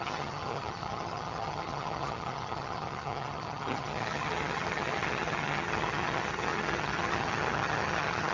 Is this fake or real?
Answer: fake